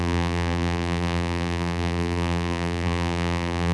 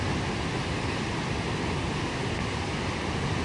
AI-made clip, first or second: first